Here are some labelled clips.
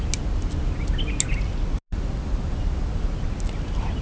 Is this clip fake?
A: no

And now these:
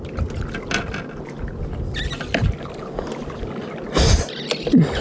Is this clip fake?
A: no